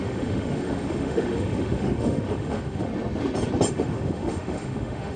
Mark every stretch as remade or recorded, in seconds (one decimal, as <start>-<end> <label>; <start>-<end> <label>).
0.0-2.9 remade; 2.9-3.7 recorded; 3.7-5.2 remade

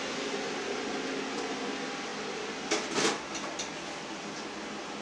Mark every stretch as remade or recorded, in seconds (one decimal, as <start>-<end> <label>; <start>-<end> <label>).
0.0-5.0 recorded

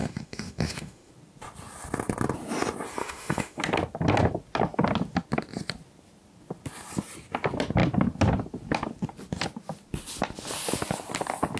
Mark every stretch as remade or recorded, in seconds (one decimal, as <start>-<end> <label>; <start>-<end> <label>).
0.0-1.1 remade; 1.1-3.0 recorded; 3.0-3.6 remade; 3.6-11.6 recorded